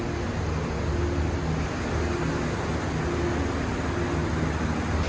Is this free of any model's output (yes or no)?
yes